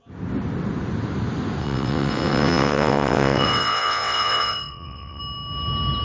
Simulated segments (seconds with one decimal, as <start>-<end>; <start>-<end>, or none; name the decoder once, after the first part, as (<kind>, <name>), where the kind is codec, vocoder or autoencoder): 1.6-5.2 (vocoder, WaveNeXt)